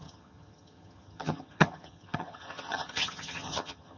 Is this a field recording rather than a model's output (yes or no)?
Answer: no